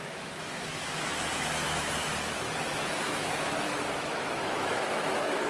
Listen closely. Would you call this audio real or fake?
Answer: fake